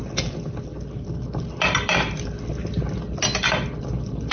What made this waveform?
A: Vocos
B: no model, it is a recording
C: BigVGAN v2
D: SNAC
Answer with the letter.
B